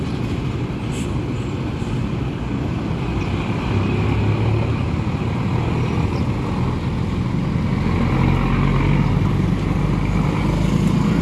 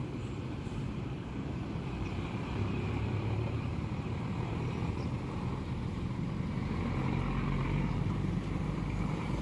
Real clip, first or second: first